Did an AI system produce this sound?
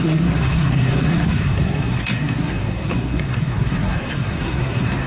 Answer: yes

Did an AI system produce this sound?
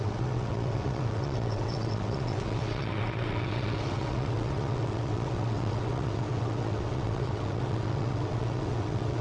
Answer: yes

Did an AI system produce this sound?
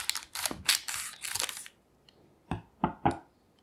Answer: no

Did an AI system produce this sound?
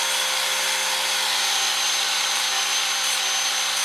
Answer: no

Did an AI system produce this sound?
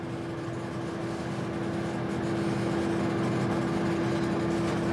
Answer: no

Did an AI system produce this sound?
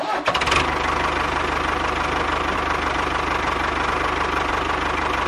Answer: no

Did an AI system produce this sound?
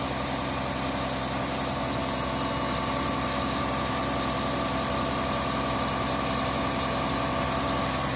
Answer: no